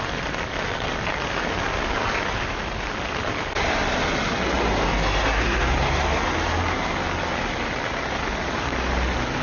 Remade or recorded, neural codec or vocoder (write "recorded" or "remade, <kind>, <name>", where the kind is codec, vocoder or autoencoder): recorded